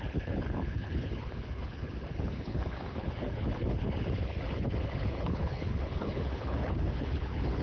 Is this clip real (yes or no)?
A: no